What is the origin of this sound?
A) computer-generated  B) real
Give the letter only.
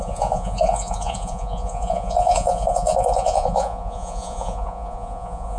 A